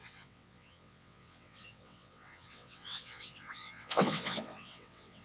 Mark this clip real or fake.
fake